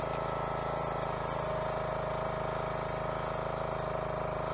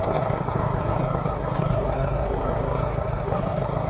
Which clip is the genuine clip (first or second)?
first